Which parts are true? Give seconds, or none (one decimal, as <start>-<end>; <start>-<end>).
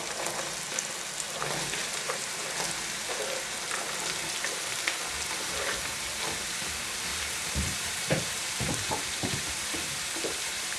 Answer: 0.0-1.8; 2.4-7.1; 10.0-10.8